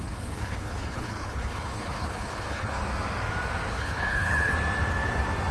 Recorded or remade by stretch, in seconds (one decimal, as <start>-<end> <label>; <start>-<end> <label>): 0.0-2.8 remade; 2.8-3.7 recorded; 3.7-4.5 remade; 4.5-5.5 recorded